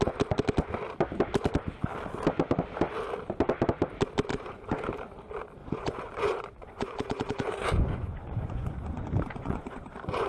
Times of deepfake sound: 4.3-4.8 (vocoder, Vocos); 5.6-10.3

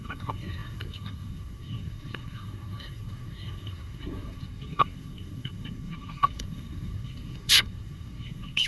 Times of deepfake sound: 0.0-8.7 (codec, SNAC)

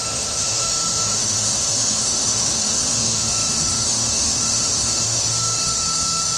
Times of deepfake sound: 0.0-6.4 (autoencoder, DAC-VAE)

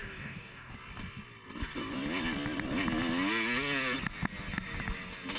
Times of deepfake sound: 0.0-0.7 (codec, DAC)

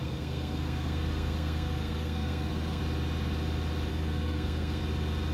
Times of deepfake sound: 0.0-2.8 (codec, SNAC); 3.9-4.8

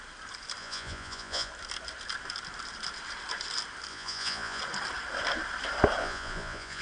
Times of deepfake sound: 0.6-1.5 (vocoder, Vocos); 3.9-4.6; 6.0-6.8

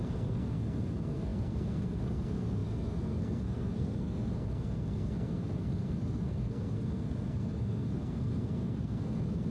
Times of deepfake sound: 0.0-9.5 (codec, SNAC)

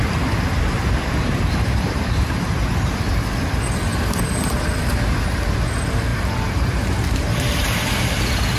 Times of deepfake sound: 0.5-3.1 (vocoder, BigVGAN v2); 3.9-4.8; 6.1-8.2